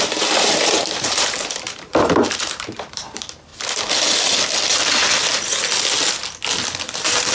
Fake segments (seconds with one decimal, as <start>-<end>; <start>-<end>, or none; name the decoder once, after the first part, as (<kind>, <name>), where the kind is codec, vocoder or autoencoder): 0.0-3.5 (vocoder, BigVGAN v2)